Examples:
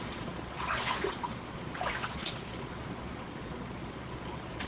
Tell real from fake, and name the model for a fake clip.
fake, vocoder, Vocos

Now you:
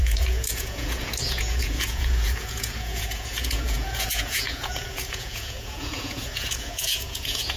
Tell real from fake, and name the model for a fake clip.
fake, vocoder, Vocos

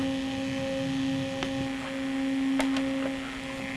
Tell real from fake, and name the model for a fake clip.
real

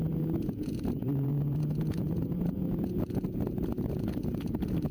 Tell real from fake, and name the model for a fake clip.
fake, vocoder, Vocos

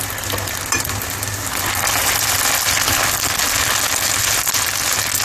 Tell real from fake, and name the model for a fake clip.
real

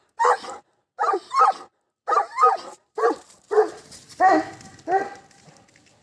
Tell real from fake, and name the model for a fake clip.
real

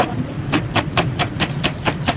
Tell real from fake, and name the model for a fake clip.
real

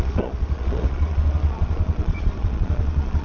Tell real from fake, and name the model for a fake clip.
fake, vocoder, Vocos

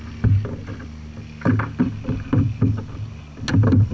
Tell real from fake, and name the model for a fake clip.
real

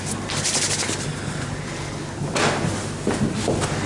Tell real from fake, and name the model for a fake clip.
real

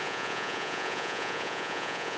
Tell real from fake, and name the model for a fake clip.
fake, vocoder, Vocos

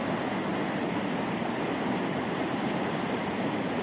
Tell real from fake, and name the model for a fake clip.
real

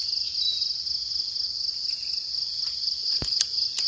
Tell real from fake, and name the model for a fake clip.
real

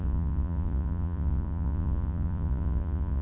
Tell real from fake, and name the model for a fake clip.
fake, vocoder, Vocos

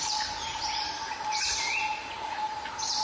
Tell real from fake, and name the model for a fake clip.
real